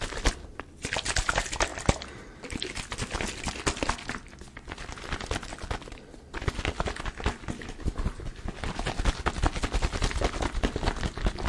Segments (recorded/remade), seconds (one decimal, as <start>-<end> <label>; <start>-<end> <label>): 0.0-11.5 recorded